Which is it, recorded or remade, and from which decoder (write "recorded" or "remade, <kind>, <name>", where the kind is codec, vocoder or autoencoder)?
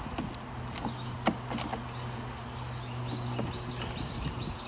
recorded